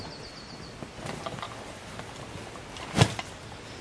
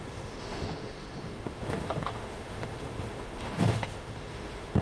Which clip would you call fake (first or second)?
second